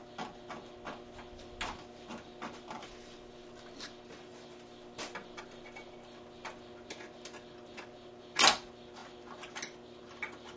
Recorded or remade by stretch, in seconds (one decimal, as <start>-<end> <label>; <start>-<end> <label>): 0.0-10.6 recorded